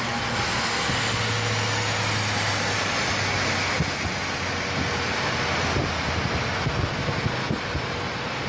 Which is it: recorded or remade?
recorded